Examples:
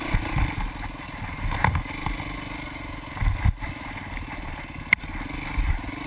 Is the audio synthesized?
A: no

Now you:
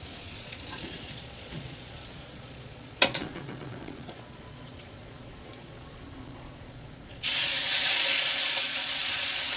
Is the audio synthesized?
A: yes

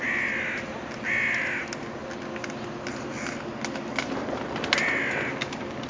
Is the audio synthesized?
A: no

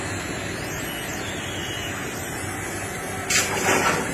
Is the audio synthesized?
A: no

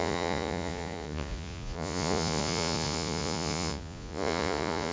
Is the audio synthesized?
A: yes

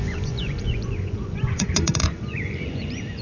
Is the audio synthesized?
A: yes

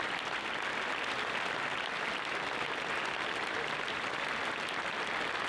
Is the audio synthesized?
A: no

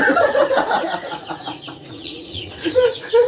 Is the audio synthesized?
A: yes